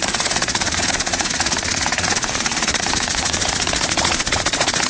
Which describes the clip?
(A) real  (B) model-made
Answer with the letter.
B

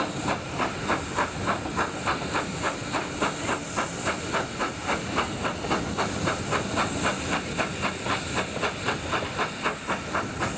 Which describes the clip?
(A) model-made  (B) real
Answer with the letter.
B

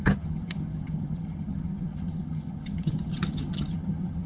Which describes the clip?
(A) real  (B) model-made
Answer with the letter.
B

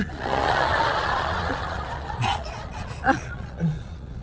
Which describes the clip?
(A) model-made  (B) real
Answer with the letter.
A